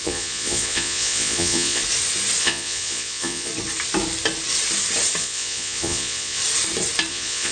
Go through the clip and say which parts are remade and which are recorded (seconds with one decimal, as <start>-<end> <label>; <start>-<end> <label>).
0.0-1.8 remade; 1.8-2.4 recorded; 2.4-3.5 remade; 3.5-5.2 recorded; 5.2-6.4 remade; 6.4-7.1 recorded; 7.1-7.5 remade